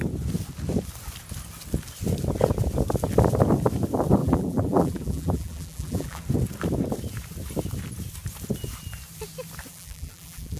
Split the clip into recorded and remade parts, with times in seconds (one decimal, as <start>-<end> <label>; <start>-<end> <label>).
0.0-4.2 recorded; 4.2-6.2 remade; 6.2-9.7 recorded; 9.7-10.6 remade